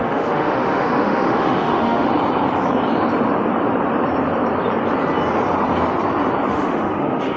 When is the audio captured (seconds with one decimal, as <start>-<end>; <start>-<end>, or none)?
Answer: 2.1-6.5